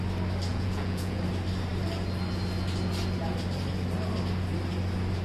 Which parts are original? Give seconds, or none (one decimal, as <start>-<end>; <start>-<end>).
0.0-0.5; 1.2-5.2